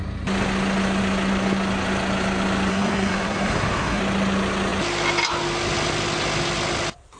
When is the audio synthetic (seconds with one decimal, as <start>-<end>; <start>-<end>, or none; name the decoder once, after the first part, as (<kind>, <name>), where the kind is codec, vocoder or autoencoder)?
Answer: 2.7-4.0 (codec, SNAC)